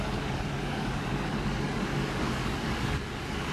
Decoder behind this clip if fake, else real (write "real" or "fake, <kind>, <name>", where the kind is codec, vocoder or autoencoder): fake, codec, DAC